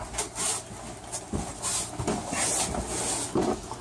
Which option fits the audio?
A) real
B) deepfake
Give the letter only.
A